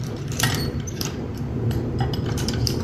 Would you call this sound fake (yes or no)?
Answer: yes